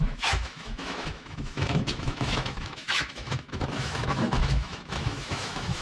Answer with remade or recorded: remade